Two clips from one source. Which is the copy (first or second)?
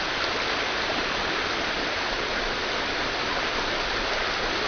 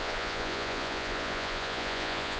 second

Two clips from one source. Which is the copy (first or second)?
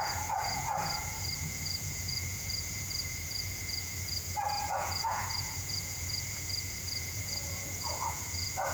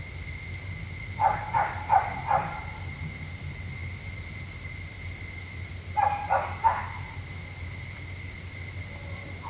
first